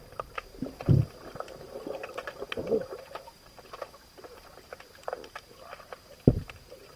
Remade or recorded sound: recorded